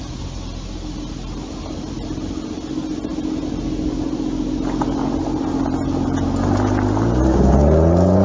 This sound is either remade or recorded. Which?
recorded